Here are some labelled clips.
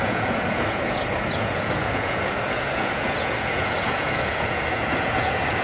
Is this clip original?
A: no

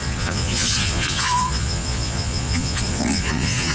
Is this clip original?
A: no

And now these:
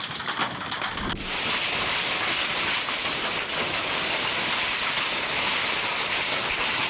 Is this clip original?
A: yes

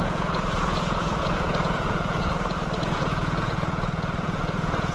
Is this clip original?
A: no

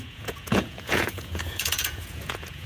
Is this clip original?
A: no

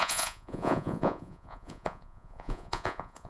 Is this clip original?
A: no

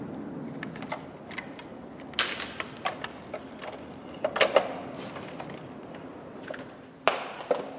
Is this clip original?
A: yes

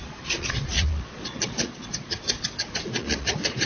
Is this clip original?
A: no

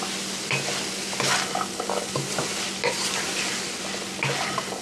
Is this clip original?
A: yes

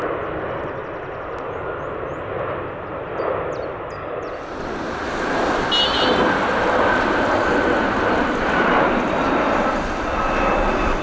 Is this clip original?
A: yes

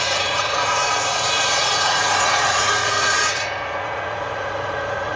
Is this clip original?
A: no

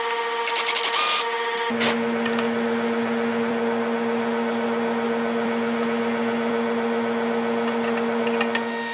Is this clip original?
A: yes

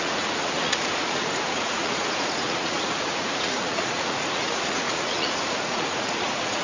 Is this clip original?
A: no